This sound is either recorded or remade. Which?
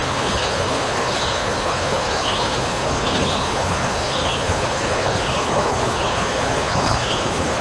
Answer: remade